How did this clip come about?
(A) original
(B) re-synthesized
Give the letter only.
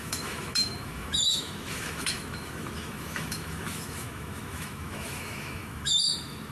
B